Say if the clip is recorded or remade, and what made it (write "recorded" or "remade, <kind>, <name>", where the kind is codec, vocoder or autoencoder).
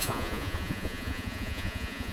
remade, vocoder, Vocos